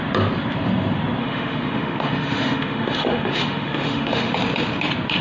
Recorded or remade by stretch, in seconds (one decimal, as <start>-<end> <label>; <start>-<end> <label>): 0.0-1.2 recorded; 1.2-4.3 remade; 4.3-5.2 recorded